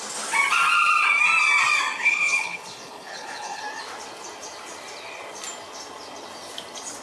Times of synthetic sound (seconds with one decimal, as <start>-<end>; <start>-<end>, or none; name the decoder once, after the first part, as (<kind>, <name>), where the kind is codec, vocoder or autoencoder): 2.0-3.6 (codec, HILCodec)